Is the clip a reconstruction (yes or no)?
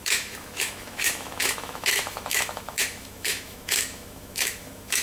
yes